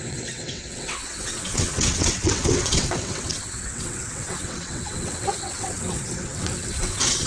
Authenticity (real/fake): fake